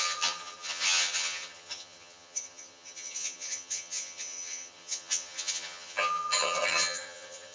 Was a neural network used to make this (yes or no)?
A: yes